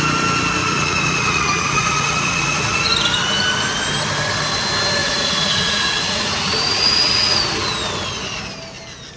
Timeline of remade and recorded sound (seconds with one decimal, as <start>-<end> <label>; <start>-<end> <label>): 0.0-0.6 recorded; 0.6-2.9 remade; 2.9-5.0 recorded; 5.0-7.4 remade; 7.4-9.2 recorded